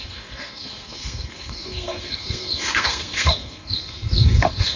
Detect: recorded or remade remade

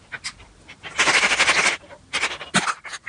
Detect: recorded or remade recorded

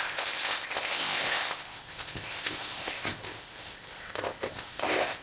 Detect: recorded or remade remade